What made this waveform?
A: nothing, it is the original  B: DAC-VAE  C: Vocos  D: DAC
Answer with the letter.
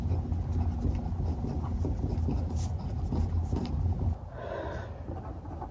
A